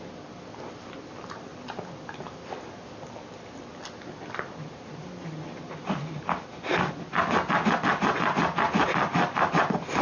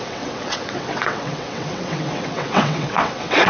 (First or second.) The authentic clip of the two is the first